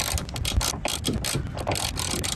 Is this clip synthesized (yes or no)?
no